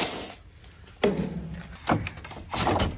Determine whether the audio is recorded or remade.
recorded